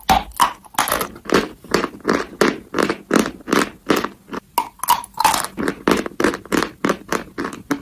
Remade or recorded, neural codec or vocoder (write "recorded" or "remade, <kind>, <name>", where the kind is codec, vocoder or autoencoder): recorded